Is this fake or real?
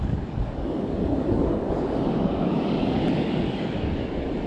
fake